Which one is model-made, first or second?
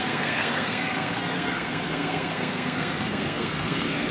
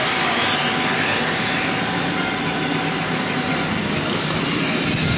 first